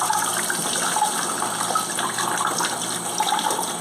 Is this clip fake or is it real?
real